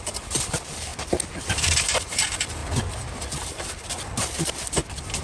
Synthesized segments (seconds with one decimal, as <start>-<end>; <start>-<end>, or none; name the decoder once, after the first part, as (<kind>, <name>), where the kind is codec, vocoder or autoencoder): 0.0-0.9 (vocoder, BigVGAN v2); 1.8-2.6; 3.2-5.2